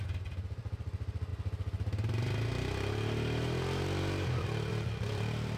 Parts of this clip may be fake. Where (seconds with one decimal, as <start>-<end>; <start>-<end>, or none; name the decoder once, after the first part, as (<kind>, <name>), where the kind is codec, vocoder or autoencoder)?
0.0-1.3 (vocoder, BigVGAN v2); 4.7-5.6